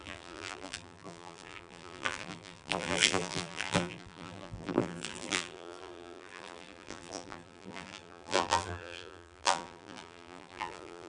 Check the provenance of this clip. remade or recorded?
remade